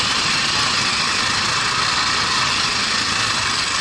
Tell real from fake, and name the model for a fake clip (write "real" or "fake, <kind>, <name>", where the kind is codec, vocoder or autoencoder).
real